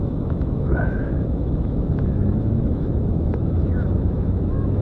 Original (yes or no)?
no